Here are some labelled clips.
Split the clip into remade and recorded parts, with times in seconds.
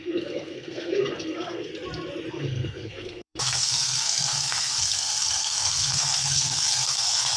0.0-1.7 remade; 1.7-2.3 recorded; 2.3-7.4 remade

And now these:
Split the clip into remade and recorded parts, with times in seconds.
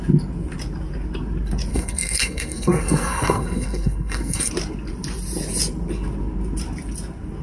0.0-1.7 recorded; 1.7-4.5 remade; 4.5-7.4 recorded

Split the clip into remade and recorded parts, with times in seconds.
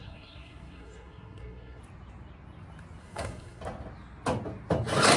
0.0-1.8 remade; 1.8-3.0 recorded; 3.0-3.6 remade; 3.6-5.2 recorded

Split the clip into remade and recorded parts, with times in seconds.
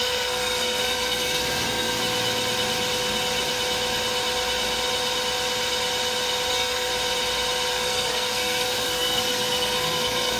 0.0-2.0 remade; 2.0-6.5 recorded; 6.5-6.9 remade; 6.9-7.7 recorded; 7.7-10.4 remade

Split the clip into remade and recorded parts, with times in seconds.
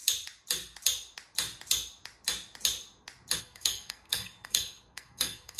0.0-3.4 recorded; 3.4-5.6 remade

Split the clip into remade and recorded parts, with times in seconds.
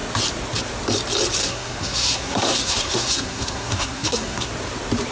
0.0-1.4 recorded; 1.4-4.5 remade; 4.5-5.1 recorded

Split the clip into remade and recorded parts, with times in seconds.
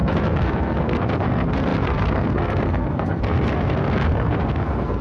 0.0-5.0 remade